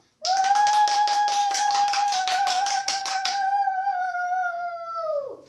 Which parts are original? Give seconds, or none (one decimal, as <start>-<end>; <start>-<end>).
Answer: 0.0-1.4; 4.7-5.5